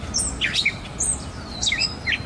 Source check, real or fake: real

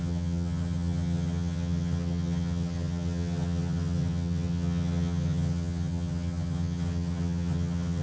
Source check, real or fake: fake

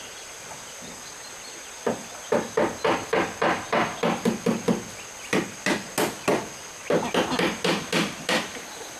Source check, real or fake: real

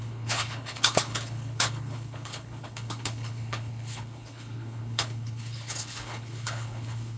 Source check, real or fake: fake